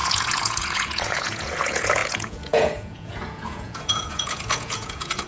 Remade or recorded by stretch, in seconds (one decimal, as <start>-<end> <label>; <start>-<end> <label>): 0.0-5.3 remade